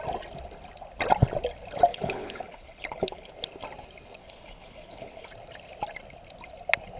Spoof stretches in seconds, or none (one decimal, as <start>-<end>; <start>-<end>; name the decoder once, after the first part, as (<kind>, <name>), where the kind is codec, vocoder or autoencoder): 1.9-3.3 (codec, HILCodec); 4.2-5.3